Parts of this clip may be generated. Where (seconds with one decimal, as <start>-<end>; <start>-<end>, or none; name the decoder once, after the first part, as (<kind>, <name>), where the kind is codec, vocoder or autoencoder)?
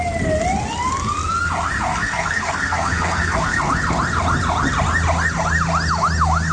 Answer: 1.9-3.6 (codec, SNAC)